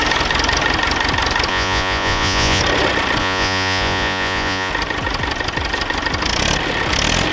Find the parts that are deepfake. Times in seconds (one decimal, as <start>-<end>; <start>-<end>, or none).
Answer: 1.5-2.6; 3.2-4.7